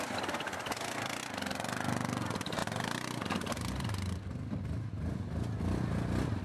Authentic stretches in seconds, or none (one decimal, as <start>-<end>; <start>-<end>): 0.0-6.4

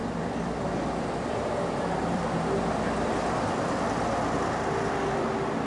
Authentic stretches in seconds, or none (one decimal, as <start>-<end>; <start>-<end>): 3.1-5.7

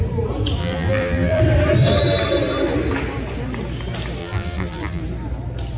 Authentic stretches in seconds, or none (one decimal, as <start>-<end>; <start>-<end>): 0.0-0.6; 1.4-4.2; 5.0-5.8

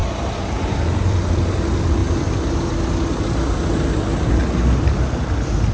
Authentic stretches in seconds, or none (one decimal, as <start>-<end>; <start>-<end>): 2.0-4.3

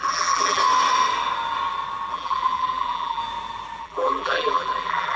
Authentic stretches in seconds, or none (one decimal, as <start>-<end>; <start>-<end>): 0.6-2.1; 3.2-3.8